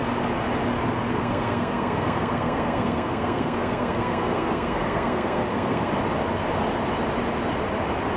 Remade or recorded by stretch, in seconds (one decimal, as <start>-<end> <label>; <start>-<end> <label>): 0.0-1.1 recorded; 1.1-5.9 remade; 5.9-8.2 recorded